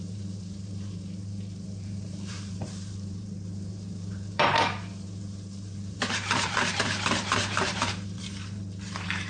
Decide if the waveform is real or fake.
fake